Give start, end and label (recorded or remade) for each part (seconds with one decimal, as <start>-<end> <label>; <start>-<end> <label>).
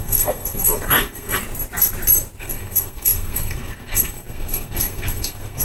0.0-1.4 remade; 1.4-2.4 recorded; 2.4-5.6 remade